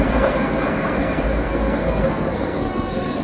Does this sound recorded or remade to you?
remade